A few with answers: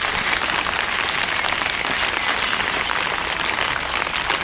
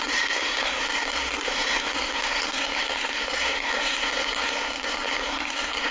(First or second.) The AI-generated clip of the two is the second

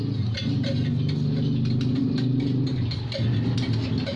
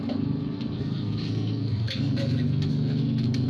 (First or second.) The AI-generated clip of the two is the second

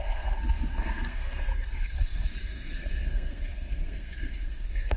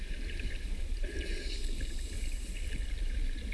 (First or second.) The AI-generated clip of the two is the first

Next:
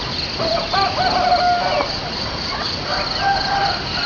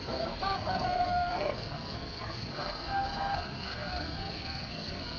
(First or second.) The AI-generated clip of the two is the second